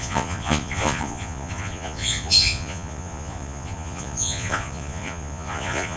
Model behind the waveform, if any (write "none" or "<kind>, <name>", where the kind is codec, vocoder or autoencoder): vocoder, Vocos